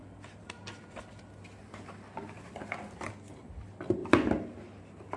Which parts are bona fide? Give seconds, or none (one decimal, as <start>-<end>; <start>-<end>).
4.0-4.8

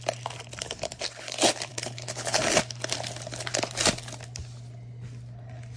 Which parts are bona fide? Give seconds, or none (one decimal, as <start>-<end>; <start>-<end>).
0.0-1.7; 2.6-5.8